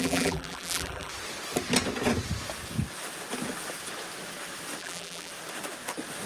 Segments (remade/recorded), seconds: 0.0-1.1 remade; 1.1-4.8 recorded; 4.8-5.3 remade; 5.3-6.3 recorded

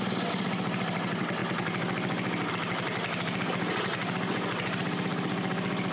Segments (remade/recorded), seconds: 0.0-5.9 recorded

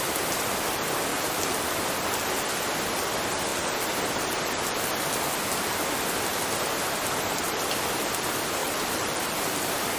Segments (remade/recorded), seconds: 0.0-1.1 recorded; 1.1-1.6 remade; 1.6-8.6 recorded; 8.6-9.5 remade; 9.5-10.0 recorded

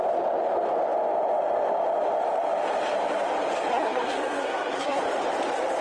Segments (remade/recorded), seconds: 0.0-3.7 recorded; 3.7-5.0 remade; 5.0-5.8 recorded

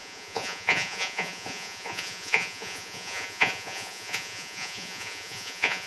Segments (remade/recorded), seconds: 0.0-5.9 remade

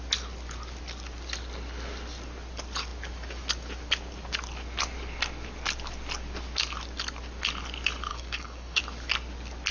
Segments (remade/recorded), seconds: 0.0-8.1 recorded; 8.1-8.8 remade; 8.8-9.7 recorded

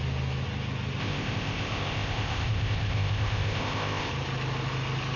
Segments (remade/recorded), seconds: 0.0-1.0 recorded; 1.0-4.1 remade; 4.1-5.2 recorded

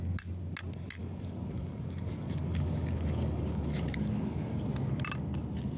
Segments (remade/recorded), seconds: 0.0-1.0 recorded; 1.0-4.5 remade; 4.5-5.8 recorded